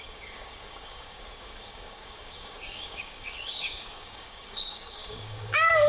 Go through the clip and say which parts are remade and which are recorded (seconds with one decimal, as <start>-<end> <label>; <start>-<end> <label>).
0.0-5.9 remade